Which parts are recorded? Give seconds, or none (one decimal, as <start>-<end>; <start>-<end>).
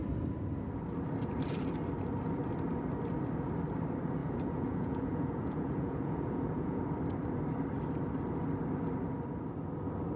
0.0-4.2; 6.8-10.2